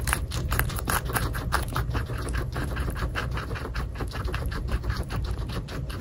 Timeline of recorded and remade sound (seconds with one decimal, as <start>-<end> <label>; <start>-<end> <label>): 0.0-3.2 remade; 3.2-4.4 recorded; 4.4-6.0 remade

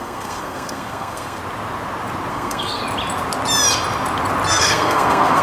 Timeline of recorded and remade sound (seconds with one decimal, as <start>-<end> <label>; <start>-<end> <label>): 0.0-1.4 remade; 1.4-2.3 recorded; 2.3-2.8 remade; 2.8-4.5 recorded; 4.5-5.4 remade

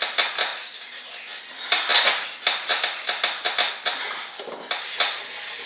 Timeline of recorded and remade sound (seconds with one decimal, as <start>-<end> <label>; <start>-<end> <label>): 0.0-0.5 recorded; 0.5-1.0 remade; 1.0-5.7 recorded

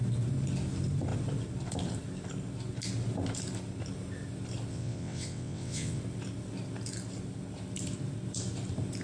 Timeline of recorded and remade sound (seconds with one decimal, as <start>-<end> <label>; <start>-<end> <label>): 0.0-4.7 recorded; 4.7-6.0 remade; 6.0-9.0 recorded

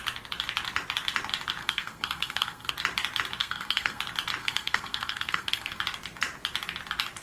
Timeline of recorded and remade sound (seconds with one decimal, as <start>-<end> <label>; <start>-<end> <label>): 0.0-1.6 recorded; 1.6-2.7 remade; 2.7-3.4 recorded; 3.4-4.0 remade; 4.0-4.4 recorded; 4.4-5.8 remade; 5.8-7.2 recorded

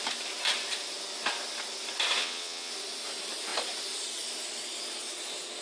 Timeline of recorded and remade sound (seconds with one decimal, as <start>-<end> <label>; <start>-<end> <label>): 0.0-2.2 recorded; 2.2-2.7 remade; 2.7-5.6 recorded

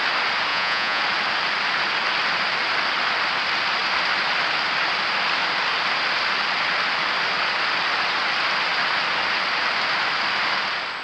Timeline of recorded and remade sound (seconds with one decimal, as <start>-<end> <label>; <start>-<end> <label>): 0.0-0.5 recorded; 0.5-1.0 remade; 1.0-11.0 recorded

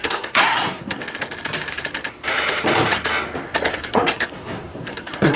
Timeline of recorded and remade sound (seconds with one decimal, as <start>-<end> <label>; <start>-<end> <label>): 0.0-1.0 remade; 1.0-3.7 recorded; 3.7-5.4 remade